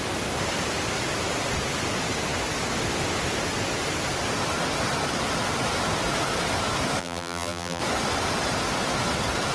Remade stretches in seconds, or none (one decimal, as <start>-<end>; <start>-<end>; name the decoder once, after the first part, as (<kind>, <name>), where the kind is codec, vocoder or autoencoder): 7.0-7.8 (vocoder, BigVGAN v2)